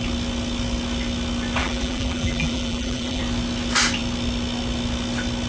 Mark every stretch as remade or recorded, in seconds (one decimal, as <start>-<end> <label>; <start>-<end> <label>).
0.0-1.6 recorded; 1.6-3.2 remade; 3.2-5.5 recorded